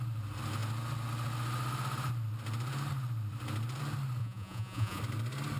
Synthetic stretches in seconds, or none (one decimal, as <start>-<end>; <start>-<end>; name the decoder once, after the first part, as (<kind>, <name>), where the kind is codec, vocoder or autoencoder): 4.2-5.0 (vocoder, Vocos)